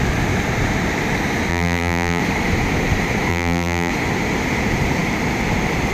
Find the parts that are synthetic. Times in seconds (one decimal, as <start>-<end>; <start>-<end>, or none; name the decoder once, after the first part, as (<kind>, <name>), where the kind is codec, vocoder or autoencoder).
1.5-2.2 (vocoder, BigVGAN v2); 3.3-3.9